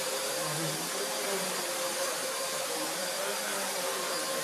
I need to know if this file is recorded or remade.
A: remade